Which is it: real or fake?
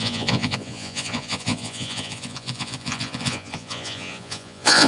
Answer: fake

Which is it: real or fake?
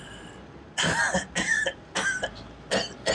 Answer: real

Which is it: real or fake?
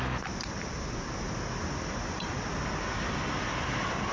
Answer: real